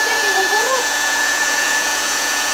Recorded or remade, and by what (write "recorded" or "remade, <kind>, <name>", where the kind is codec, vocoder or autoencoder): remade, vocoder, Vocos